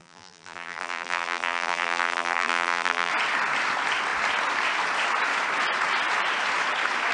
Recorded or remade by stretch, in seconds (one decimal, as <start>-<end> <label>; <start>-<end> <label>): 0.0-3.1 remade; 3.1-7.1 recorded

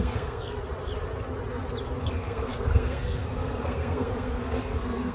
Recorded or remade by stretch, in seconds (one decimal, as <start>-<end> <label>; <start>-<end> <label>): 0.0-0.6 remade; 0.6-2.0 recorded; 2.0-5.1 remade

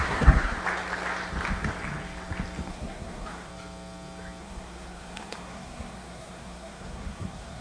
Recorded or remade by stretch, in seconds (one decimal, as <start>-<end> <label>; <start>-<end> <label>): 0.0-0.6 remade; 0.6-2.7 recorded; 2.7-3.5 remade; 3.5-4.4 recorded; 4.4-7.6 remade

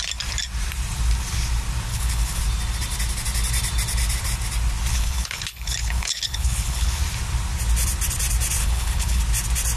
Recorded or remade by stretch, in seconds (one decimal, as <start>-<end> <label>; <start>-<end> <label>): 0.0-1.9 recorded; 1.9-2.4 remade; 2.4-4.9 recorded; 4.9-7.0 remade; 7.0-8.6 recorded; 8.6-9.2 remade; 9.2-9.8 recorded

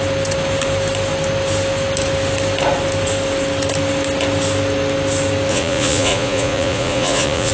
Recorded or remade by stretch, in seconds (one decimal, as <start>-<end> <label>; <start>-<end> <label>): 0.0-5.5 recorded; 5.5-7.5 remade